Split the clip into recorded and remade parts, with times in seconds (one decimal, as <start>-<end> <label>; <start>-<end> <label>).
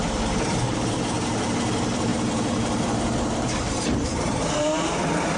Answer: 0.0-5.4 remade